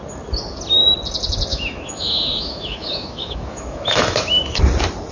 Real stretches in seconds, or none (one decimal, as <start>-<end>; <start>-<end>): 0.0-1.5; 4.6-5.1

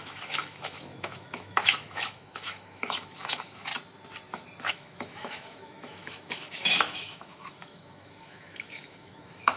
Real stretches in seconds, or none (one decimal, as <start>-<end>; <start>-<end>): 3.7-4.6

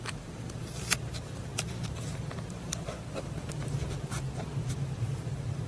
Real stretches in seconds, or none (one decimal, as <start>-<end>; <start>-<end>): none

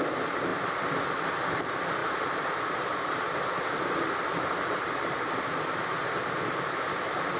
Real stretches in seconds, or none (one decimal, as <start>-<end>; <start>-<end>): 0.0-7.4

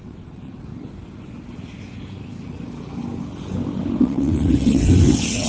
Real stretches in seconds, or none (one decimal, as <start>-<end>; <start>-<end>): 0.7-4.0

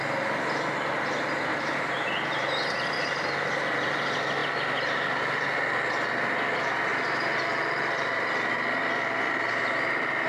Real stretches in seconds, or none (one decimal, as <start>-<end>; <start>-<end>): 0.0-1.5; 3.5-6.9; 7.4-10.3